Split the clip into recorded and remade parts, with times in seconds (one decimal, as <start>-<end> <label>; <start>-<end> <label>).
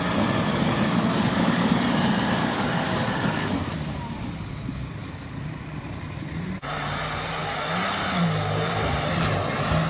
0.0-0.5 recorded; 0.5-1.8 remade; 1.8-2.4 recorded; 2.4-4.3 remade; 4.3-9.9 recorded